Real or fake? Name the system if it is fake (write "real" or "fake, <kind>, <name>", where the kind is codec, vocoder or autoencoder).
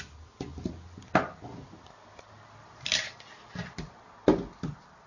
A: real